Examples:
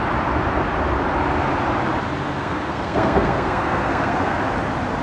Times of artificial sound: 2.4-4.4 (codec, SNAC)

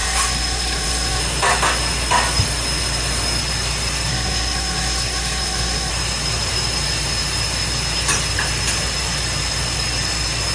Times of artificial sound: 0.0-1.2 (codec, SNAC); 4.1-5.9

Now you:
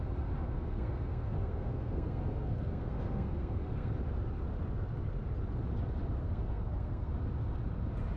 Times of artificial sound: 0.4-3.9 (codec, SNAC); 6.2-7.1

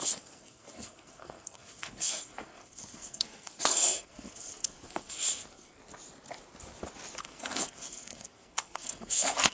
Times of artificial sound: 0.0-5.8 (codec, SNAC); 7.2-9.5